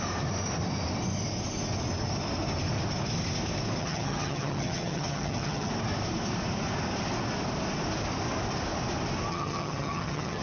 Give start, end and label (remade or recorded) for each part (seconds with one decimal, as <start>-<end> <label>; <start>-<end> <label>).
0.0-3.8 recorded; 3.8-5.7 remade; 5.7-9.3 recorded; 9.3-10.4 remade